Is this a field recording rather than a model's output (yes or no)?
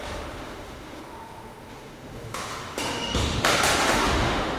no